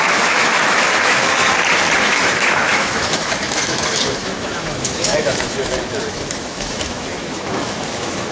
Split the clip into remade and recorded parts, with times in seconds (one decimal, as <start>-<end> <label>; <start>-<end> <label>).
0.0-1.4 remade; 1.4-2.0 recorded; 2.0-8.3 remade